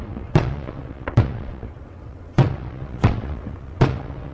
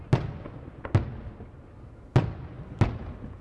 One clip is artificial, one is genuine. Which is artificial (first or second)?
first